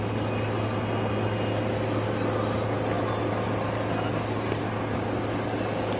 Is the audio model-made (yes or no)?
no